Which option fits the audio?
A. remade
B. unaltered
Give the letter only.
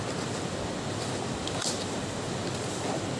B